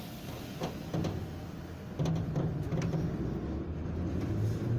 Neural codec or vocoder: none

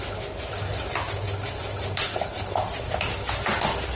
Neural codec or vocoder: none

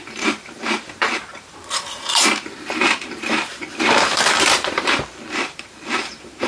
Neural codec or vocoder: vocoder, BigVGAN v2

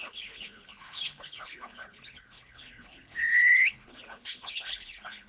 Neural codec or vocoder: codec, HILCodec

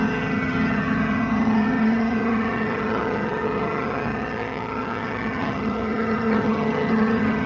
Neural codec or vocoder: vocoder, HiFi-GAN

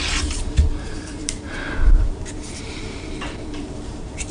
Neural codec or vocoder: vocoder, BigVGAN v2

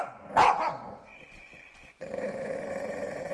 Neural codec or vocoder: vocoder, Vocos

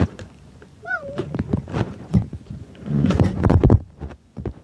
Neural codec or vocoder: vocoder, Vocos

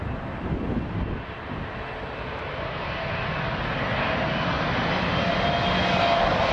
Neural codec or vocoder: none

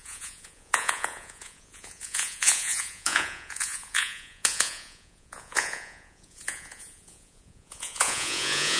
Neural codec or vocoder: vocoder, Vocos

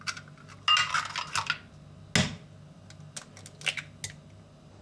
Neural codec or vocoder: none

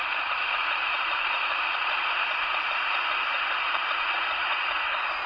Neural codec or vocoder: vocoder, BigVGAN v2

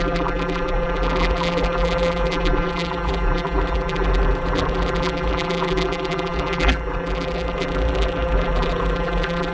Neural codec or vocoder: vocoder, BigVGAN v2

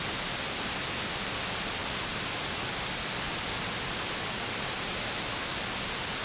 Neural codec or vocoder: none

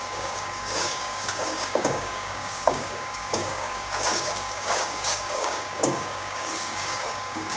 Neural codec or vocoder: codec, DAC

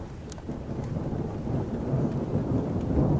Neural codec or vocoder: none